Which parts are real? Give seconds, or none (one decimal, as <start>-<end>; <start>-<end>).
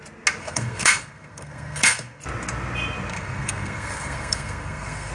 0.0-0.4; 2.2-3.1